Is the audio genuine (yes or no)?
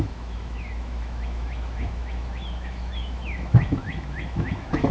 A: no